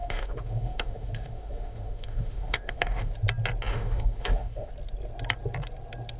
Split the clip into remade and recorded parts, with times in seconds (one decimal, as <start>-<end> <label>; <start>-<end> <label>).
0.0-3.1 remade; 3.1-3.7 recorded; 3.7-4.7 remade; 4.7-6.2 recorded